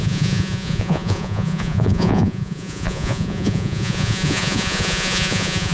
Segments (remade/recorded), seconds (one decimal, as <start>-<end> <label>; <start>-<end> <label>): 0.0-5.7 remade